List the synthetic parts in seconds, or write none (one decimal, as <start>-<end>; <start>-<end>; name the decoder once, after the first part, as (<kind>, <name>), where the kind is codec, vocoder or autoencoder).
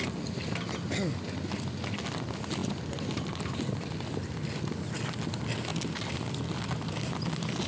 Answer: none